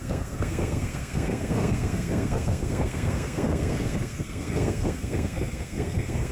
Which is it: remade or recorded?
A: remade